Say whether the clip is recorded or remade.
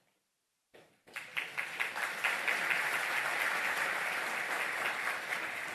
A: recorded